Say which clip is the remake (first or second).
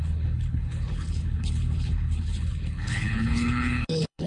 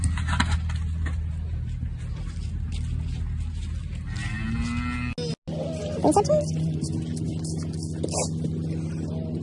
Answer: first